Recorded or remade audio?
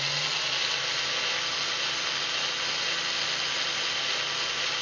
recorded